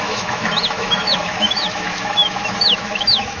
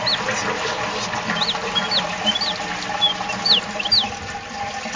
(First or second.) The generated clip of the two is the first